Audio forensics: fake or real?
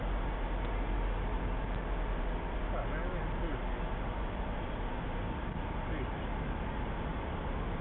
real